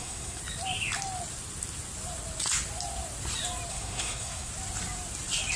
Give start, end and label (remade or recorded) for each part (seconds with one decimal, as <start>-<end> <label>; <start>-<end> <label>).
0.0-0.4 remade; 0.4-3.7 recorded; 3.7-4.5 remade; 4.5-5.6 recorded

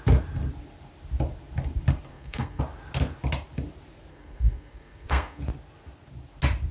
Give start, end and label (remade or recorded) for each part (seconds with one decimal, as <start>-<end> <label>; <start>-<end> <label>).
0.0-2.1 recorded; 2.1-2.6 remade; 2.6-4.1 recorded; 4.1-5.4 remade; 5.4-6.7 recorded